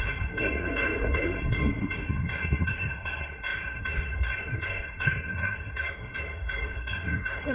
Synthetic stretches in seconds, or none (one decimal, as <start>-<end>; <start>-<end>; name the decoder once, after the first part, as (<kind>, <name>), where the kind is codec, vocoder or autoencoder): 0.0-7.5 (codec, SNAC)